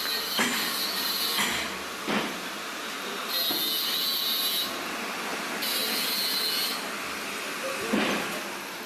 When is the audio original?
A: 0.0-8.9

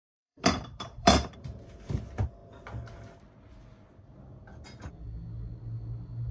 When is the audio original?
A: 2.0-6.3